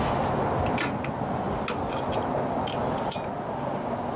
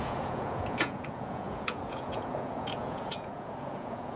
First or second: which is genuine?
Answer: first